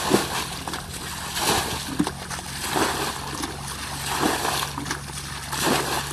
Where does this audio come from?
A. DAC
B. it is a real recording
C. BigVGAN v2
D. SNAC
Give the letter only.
B